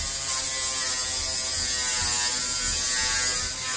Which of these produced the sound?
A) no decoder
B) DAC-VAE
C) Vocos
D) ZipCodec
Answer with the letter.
A